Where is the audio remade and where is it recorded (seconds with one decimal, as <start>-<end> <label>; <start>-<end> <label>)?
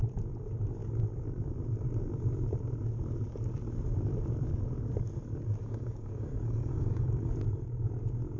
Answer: 0.0-5.6 recorded; 5.6-7.3 remade; 7.3-8.4 recorded